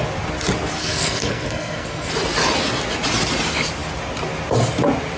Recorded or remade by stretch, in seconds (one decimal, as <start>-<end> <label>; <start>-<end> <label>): 0.0-0.8 recorded; 0.8-2.1 remade; 2.1-5.2 recorded